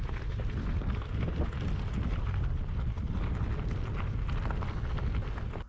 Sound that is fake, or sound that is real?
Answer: real